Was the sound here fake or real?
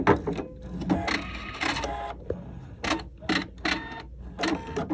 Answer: real